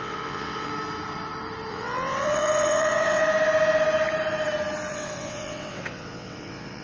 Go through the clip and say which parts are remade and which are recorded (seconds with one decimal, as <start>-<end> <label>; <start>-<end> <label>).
0.0-0.7 remade; 0.7-1.7 recorded; 1.7-3.2 remade; 3.2-4.9 recorded; 4.9-6.8 remade